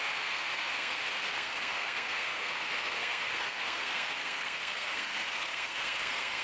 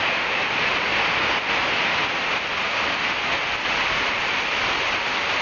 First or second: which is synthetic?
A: first